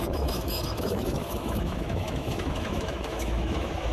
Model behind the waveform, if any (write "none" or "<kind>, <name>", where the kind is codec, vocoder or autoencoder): autoencoder, DAC-VAE